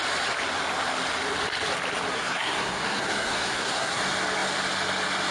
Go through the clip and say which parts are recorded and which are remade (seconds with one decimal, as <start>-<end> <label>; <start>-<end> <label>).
0.0-2.1 recorded; 2.1-4.0 remade; 4.0-5.3 recorded